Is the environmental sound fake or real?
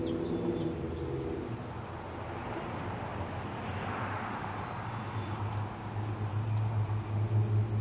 real